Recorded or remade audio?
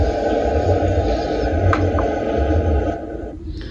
recorded